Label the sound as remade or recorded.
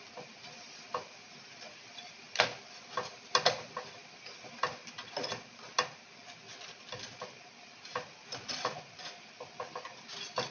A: recorded